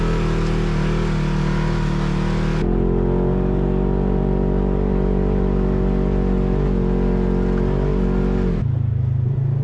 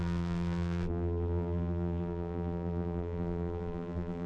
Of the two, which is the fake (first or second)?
second